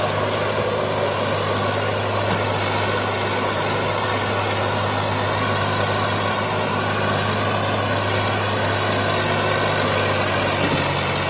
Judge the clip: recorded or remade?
recorded